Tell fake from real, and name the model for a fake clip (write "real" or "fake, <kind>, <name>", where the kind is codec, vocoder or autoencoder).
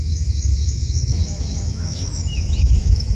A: fake, autoencoder, DAC-VAE